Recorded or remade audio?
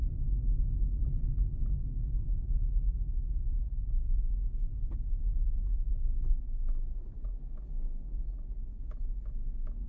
recorded